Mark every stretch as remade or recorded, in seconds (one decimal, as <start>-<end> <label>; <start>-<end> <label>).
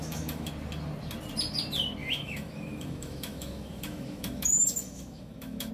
0.0-0.5 remade; 0.5-2.0 recorded; 2.0-5.7 remade